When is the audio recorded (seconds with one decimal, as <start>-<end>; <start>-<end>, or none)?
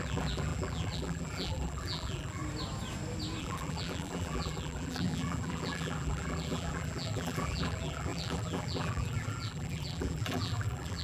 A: 2.4-3.4